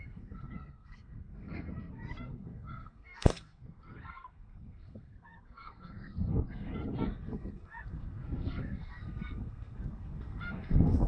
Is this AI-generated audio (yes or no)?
yes